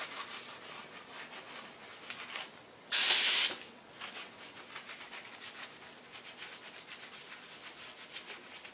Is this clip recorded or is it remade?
recorded